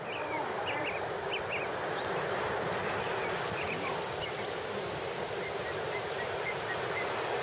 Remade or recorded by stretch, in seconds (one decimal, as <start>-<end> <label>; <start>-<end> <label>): 0.0-7.4 remade